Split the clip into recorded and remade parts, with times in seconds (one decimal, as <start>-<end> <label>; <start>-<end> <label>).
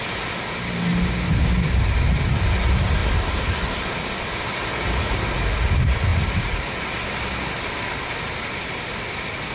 0.0-0.9 recorded; 0.9-2.3 remade; 2.3-6.1 recorded; 6.1-6.7 remade; 6.7-9.5 recorded